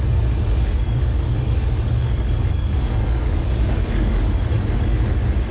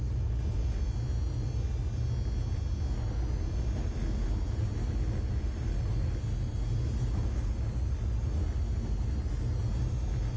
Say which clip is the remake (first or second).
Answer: first